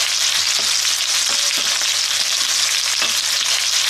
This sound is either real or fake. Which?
real